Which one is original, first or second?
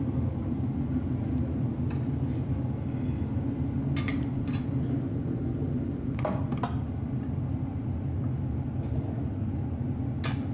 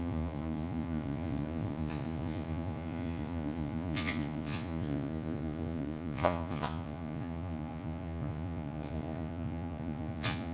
first